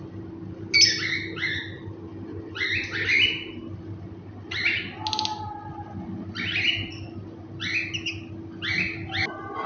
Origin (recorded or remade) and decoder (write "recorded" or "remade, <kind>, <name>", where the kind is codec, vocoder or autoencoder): recorded